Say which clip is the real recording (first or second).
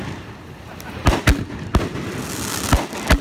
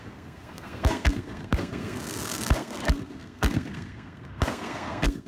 first